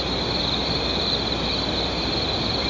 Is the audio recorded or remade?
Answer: recorded